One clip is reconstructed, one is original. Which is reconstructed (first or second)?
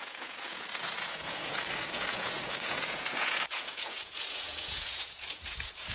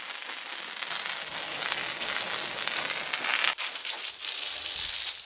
first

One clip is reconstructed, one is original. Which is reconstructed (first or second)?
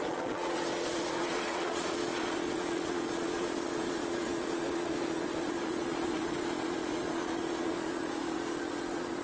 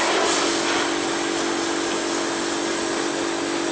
first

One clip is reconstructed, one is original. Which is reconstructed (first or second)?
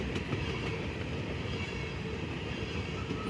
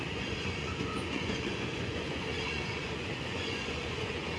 second